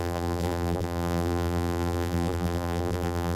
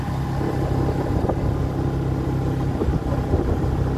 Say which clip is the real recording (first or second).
second